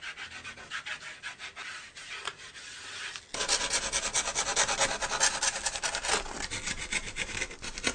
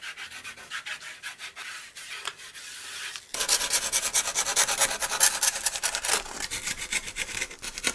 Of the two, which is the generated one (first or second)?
second